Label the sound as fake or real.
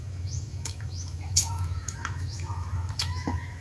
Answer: fake